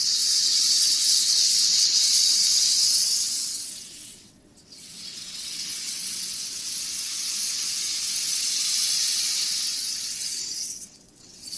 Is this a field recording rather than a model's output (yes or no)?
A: no